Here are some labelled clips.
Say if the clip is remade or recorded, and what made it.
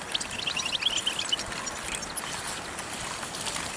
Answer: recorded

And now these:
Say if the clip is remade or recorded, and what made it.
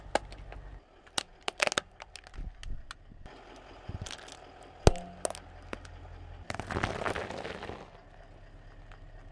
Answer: recorded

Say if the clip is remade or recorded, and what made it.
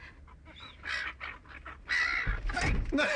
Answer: recorded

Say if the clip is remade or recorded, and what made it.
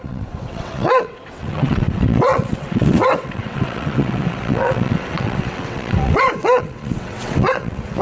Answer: remade, vocoder, WaveNeXt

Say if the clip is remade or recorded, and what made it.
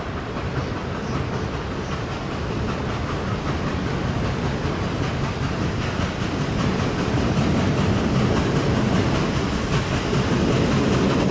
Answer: recorded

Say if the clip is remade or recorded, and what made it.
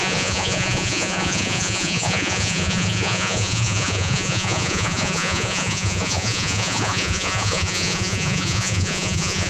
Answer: remade, vocoder, Vocos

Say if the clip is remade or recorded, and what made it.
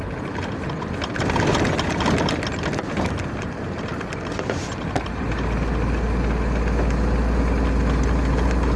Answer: recorded